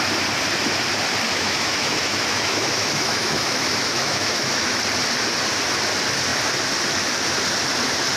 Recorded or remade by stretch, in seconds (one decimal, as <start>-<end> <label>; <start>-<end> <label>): 0.0-1.3 recorded; 1.3-4.8 remade; 4.8-8.2 recorded